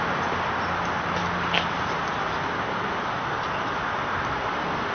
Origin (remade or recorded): recorded